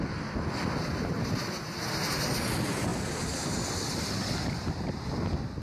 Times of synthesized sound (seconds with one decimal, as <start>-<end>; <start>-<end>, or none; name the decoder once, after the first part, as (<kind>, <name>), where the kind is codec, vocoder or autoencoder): none